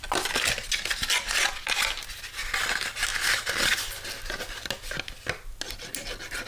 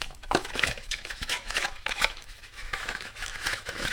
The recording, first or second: first